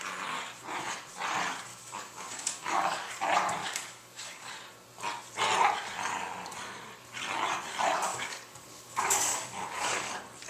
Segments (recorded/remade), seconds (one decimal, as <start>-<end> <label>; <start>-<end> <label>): 0.0-1.7 recorded; 1.7-3.1 remade; 3.1-3.6 recorded; 3.6-4.5 remade; 4.5-8.1 recorded; 8.1-10.1 remade; 10.1-10.5 recorded